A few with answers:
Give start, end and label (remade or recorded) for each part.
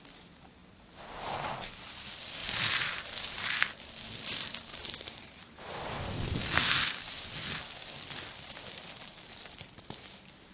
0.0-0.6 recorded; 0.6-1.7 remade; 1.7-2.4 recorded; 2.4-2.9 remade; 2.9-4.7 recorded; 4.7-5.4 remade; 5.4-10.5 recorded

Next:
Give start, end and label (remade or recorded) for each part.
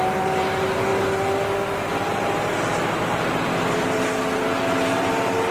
0.0-5.5 recorded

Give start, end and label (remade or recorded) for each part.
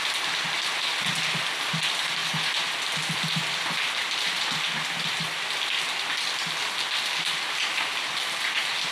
0.0-7.9 recorded; 7.9-8.9 remade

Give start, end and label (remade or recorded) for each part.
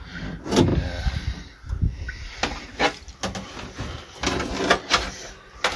0.0-0.7 recorded; 0.7-1.7 remade; 1.7-5.8 recorded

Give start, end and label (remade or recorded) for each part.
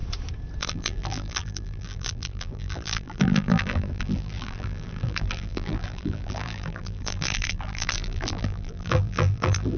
0.0-0.6 recorded; 0.6-9.8 remade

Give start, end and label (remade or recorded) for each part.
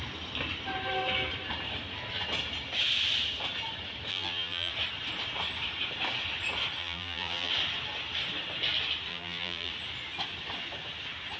0.0-4.1 recorded; 4.1-4.7 remade; 4.7-6.8 recorded; 6.8-7.5 remade; 7.5-9.1 recorded; 9.1-9.7 remade; 9.7-11.4 recorded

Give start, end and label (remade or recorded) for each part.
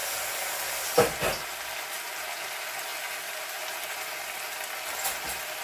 0.0-5.6 recorded